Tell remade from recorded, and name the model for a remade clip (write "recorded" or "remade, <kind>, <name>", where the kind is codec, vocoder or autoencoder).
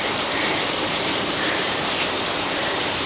remade, vocoder, BigVGAN v2